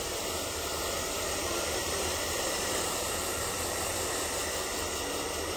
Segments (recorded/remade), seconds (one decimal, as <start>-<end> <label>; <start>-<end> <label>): 0.0-1.8 recorded; 1.8-3.9 remade; 3.9-5.6 recorded

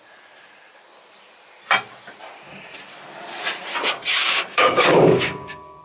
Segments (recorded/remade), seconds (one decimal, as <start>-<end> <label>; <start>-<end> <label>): 0.0-4.2 recorded; 4.2-5.8 remade

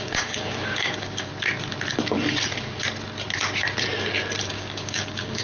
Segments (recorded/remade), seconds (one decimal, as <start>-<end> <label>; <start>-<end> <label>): 0.0-1.3 remade; 1.3-4.4 recorded; 4.4-5.4 remade

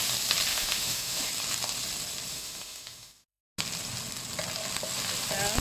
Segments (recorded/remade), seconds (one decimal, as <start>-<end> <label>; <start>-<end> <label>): 0.0-0.5 recorded; 0.5-1.3 remade; 1.3-2.3 recorded; 2.3-3.4 remade; 3.4-5.6 recorded

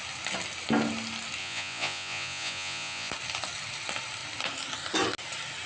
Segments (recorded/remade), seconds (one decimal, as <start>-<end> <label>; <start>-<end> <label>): 0.0-1.4 recorded; 1.4-3.1 remade; 3.1-5.7 recorded